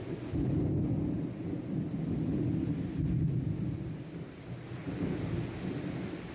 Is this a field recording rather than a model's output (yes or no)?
yes